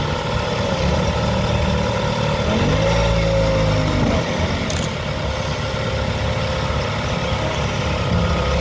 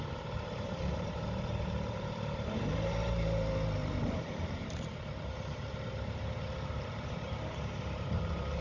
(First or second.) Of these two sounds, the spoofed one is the second